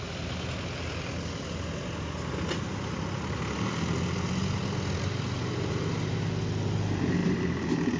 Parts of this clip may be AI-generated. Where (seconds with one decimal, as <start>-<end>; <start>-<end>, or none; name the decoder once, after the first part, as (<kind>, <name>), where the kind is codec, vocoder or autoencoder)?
none